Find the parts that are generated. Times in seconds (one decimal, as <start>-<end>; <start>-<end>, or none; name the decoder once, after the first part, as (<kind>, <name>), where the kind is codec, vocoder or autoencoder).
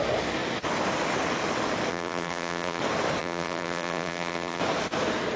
1.9-2.8 (vocoder, BigVGAN v2); 3.2-4.6